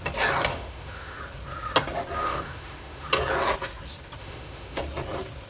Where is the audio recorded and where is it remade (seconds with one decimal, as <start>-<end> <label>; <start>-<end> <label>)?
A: 0.0-0.5 recorded; 0.5-1.2 remade; 1.2-2.2 recorded; 2.2-3.1 remade; 3.1-4.2 recorded; 4.2-4.8 remade; 4.8-5.5 recorded